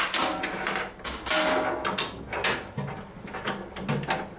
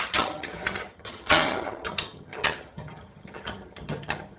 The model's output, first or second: second